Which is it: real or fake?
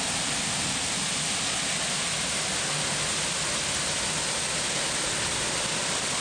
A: real